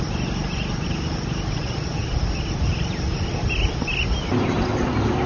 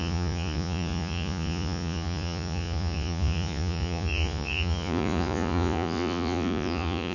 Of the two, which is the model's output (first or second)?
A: second